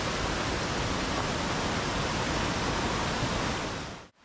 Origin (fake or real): real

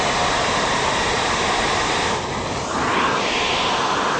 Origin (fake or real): real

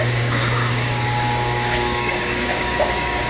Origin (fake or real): fake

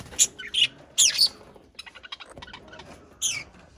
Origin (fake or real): real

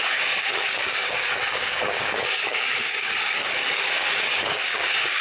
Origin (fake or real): fake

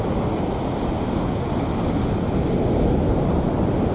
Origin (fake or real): real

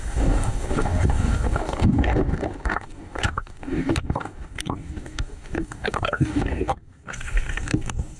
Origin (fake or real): fake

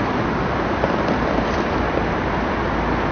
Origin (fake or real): real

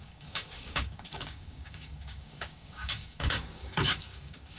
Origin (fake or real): fake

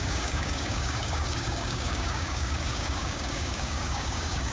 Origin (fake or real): fake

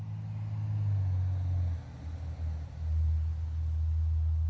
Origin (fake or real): real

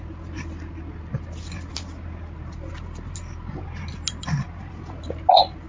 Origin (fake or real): real